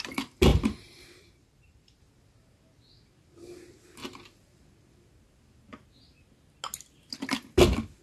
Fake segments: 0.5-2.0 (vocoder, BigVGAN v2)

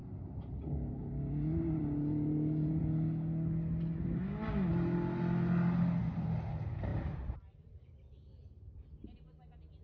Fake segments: 1.8-2.8 (vocoder, BigVGAN v2); 6.9-8.7

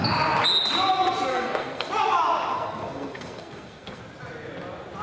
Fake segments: 1.3-1.9 (codec, SNAC); 2.5-4.0

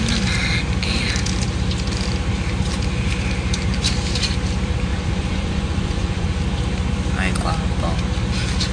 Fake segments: 4.9-6.4 (vocoder, Vocos)

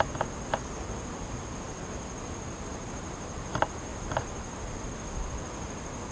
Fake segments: none

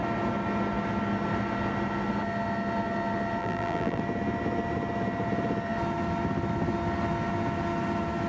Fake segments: 3.4-4.0 (vocoder, BigVGAN v2)

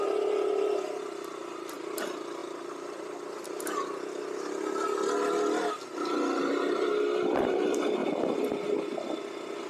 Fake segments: none